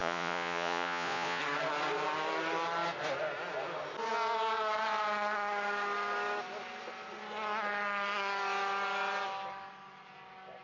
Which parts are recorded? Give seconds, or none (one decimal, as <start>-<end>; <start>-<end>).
1.4-10.6